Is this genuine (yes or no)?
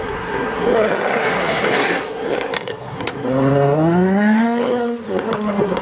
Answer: no